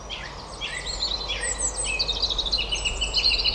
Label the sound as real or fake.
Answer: real